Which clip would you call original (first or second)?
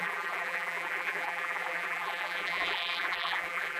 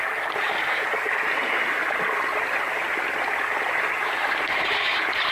second